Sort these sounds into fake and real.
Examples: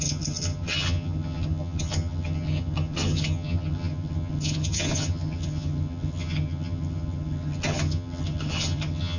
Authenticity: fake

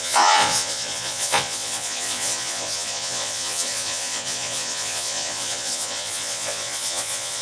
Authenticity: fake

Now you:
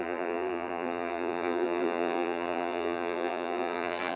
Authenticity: fake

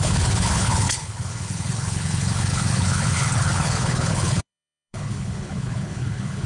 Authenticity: fake